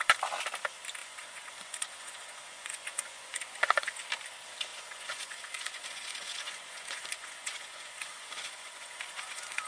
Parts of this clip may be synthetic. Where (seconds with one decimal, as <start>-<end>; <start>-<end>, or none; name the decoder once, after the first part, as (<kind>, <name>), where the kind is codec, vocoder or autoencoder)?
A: 1.0-4.0 (vocoder, Vocos); 4.7-9.7